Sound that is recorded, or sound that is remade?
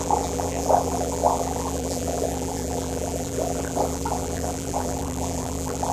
remade